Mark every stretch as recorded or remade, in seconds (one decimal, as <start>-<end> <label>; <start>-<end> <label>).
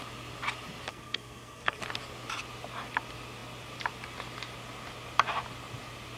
0.0-0.9 recorded; 0.9-1.8 remade; 1.8-6.2 recorded